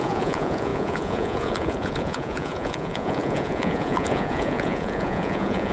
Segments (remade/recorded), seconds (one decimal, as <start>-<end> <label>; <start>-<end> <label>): 0.0-5.7 remade